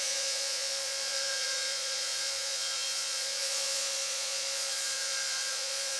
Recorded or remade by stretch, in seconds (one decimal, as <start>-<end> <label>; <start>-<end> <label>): 0.0-6.0 remade